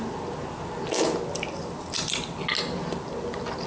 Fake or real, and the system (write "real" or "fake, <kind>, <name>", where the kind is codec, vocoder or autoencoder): real